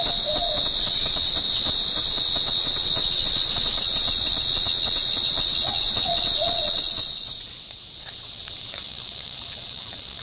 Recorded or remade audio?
remade